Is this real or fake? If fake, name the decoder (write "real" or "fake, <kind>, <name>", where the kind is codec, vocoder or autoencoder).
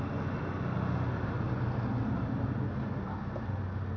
real